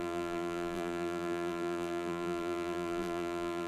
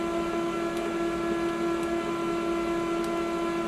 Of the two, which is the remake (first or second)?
first